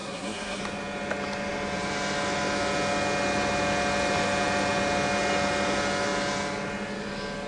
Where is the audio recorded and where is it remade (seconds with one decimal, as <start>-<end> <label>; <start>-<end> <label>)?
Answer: 0.0-0.6 remade; 0.6-7.5 recorded